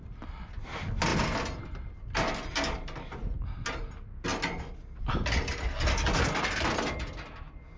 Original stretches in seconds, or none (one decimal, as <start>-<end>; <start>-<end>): 0.0-7.8